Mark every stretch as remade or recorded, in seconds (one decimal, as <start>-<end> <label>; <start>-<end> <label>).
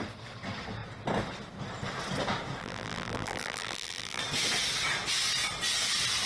0.0-2.6 recorded; 2.6-4.2 remade; 4.2-6.3 recorded